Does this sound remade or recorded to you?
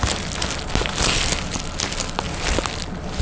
recorded